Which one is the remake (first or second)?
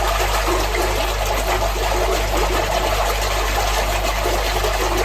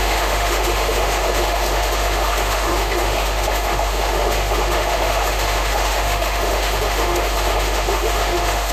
second